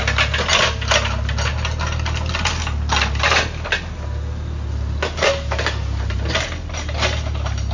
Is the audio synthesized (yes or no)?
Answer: no